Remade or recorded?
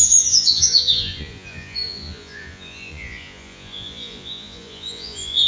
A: remade